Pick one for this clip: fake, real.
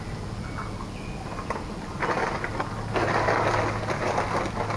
real